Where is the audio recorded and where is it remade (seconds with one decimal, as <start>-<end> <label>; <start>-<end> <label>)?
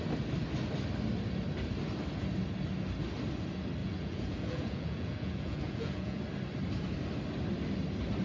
0.0-3.8 recorded; 3.8-6.2 remade; 6.2-8.2 recorded